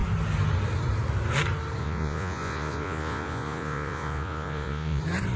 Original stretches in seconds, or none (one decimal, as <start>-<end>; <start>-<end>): 0.0-1.8; 5.0-5.4